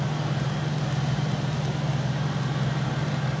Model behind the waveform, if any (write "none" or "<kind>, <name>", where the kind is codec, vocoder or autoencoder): none